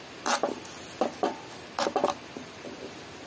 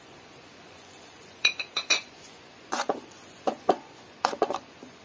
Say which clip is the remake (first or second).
second